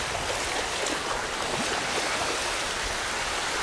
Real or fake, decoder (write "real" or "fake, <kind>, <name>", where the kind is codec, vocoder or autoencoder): real